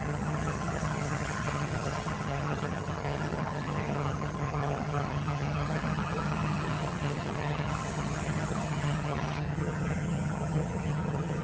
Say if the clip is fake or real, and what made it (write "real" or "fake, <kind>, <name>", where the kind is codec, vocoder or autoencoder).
fake, vocoder, HiFi-GAN